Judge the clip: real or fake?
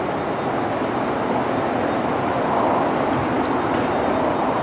real